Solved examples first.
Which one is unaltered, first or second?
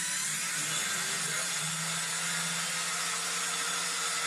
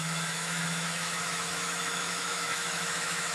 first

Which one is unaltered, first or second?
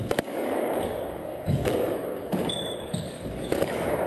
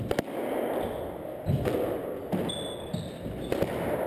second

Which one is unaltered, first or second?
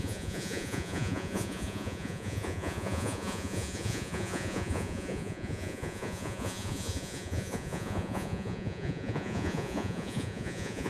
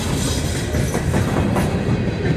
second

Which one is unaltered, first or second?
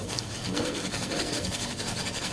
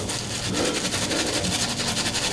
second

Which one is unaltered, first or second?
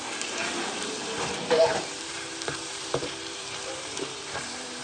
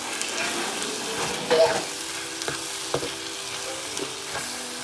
second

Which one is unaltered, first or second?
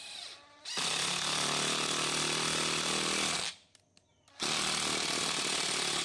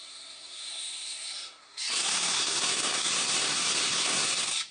first